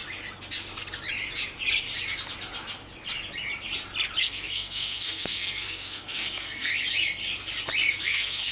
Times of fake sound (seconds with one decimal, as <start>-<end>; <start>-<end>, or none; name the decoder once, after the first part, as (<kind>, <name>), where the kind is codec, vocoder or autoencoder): 4.2-6.7 (codec, SNAC); 8.0-8.5